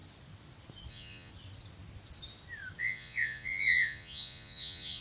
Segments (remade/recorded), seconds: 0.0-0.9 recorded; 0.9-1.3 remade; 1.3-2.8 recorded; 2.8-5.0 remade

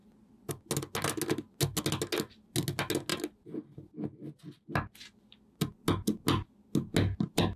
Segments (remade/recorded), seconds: 0.0-7.6 recorded

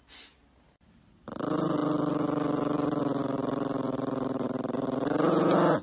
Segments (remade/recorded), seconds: 0.0-5.8 recorded

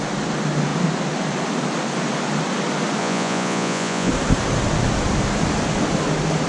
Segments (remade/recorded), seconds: 0.0-3.0 recorded; 3.0-4.1 remade; 4.1-6.5 recorded

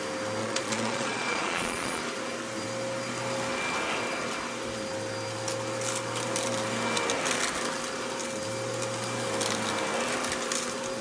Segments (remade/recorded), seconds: 0.0-0.4 recorded; 0.4-2.0 remade; 2.0-11.0 recorded

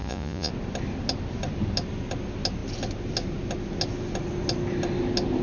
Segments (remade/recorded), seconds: 0.0-0.5 remade; 0.5-5.4 recorded

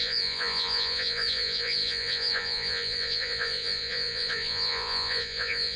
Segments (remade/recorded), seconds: 0.0-5.8 remade

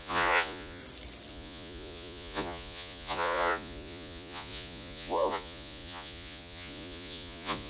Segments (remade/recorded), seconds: 0.0-0.8 remade; 0.8-1.3 recorded; 1.3-7.7 remade